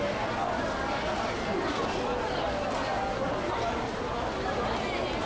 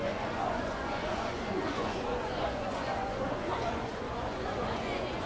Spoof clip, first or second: second